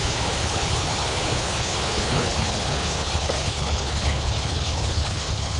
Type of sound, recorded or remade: remade